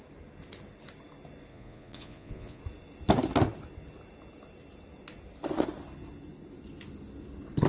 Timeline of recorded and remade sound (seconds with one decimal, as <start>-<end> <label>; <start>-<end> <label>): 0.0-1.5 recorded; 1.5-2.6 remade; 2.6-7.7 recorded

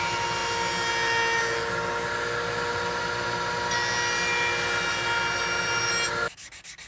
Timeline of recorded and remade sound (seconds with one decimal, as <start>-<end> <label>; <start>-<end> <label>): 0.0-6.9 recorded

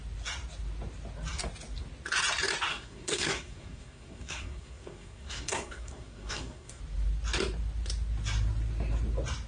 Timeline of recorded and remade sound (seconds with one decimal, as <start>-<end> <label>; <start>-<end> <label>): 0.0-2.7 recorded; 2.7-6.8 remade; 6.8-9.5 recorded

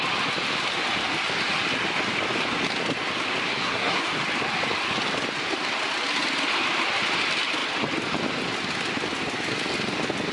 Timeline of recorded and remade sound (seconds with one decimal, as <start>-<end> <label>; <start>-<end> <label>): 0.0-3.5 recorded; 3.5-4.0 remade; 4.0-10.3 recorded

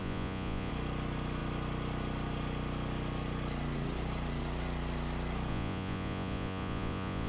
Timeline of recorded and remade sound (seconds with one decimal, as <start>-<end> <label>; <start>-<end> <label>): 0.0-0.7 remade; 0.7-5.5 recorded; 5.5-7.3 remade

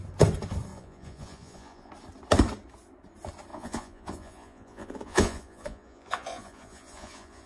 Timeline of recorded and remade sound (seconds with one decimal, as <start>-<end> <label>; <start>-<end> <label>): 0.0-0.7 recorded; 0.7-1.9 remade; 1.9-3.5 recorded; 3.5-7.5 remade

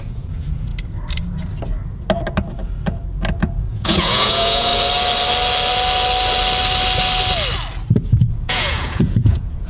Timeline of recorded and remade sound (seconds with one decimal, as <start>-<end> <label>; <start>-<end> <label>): 0.0-0.7 remade; 0.7-3.6 recorded; 3.6-4.7 remade; 4.7-8.3 recorded; 8.3-9.7 remade

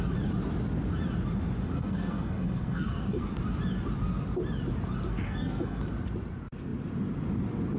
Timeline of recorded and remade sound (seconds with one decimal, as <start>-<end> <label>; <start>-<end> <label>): 0.0-1.7 recorded; 1.7-3.3 remade; 3.3-5.1 recorded; 5.1-5.8 remade; 5.8-7.8 recorded